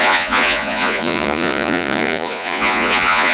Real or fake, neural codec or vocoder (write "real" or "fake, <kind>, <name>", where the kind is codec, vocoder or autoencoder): fake, vocoder, Vocos